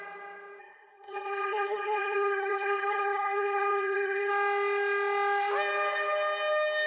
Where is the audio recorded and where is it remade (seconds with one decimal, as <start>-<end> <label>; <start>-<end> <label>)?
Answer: 0.0-0.6 recorded; 0.6-4.3 remade; 4.3-6.9 recorded